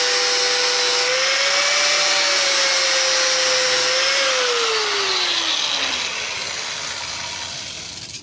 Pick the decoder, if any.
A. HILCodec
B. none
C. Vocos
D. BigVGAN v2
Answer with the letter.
B